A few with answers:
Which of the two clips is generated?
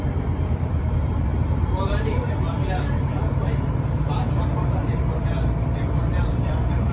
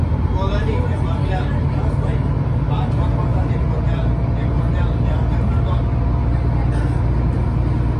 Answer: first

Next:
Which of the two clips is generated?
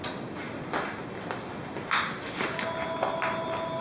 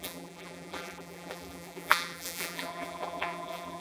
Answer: second